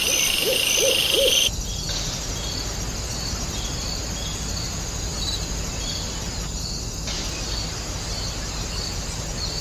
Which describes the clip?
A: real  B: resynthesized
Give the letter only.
A